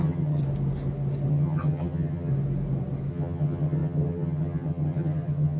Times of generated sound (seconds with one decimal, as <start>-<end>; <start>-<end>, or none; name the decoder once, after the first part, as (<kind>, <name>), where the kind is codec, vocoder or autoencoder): 0.0-0.4 (vocoder, HiFi-GAN); 1.3-2.3; 3.1-5.6